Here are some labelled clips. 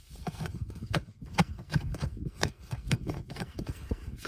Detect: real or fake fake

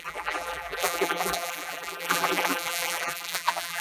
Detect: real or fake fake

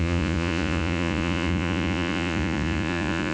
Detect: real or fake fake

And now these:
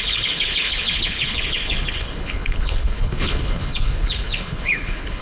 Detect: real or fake fake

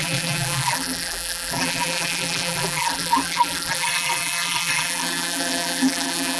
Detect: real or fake fake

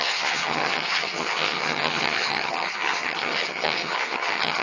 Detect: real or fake fake